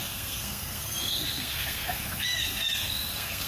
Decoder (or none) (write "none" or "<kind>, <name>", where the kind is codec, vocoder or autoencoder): codec, SNAC